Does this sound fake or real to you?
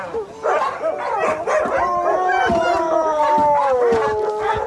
real